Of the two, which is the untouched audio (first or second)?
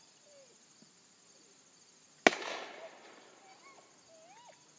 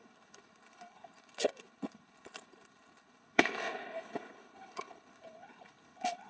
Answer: first